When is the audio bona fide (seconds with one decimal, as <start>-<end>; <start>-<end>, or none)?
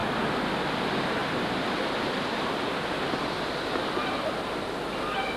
0.5-1.2; 3.7-5.4